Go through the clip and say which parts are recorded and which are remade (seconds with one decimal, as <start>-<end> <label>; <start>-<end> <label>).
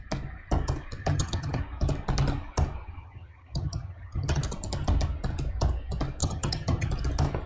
0.0-1.0 recorded; 1.0-1.6 remade; 1.6-3.0 recorded; 3.0-4.4 remade; 4.4-6.2 recorded; 6.2-6.9 remade; 6.9-7.5 recorded